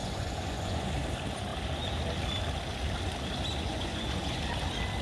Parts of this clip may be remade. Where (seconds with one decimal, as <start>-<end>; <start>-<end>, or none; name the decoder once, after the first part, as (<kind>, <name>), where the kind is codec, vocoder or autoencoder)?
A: 0.0-0.9 (vocoder, Vocos); 3.5-4.4